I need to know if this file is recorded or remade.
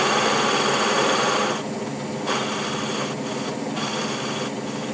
recorded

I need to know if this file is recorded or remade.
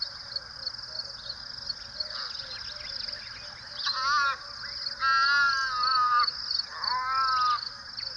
recorded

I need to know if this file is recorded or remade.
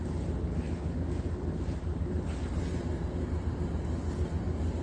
recorded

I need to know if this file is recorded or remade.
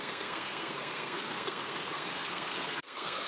remade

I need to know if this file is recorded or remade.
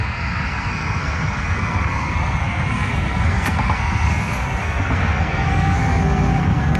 remade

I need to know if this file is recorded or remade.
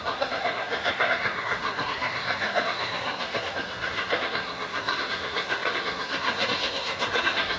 remade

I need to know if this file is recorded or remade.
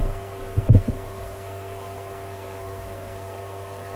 remade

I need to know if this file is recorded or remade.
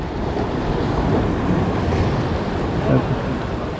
recorded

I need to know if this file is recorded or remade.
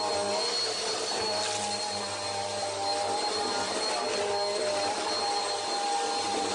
recorded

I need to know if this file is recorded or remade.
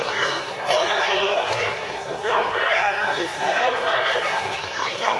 remade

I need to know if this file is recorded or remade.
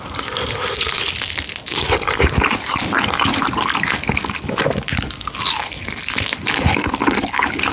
recorded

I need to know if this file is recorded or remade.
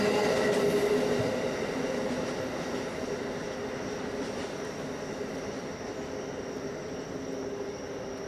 recorded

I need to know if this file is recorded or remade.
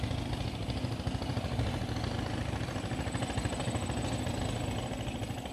recorded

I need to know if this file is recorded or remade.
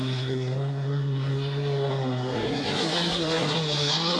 remade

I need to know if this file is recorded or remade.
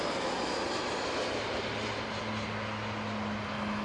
recorded